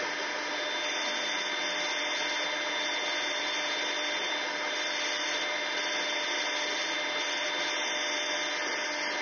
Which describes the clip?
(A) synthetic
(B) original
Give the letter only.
B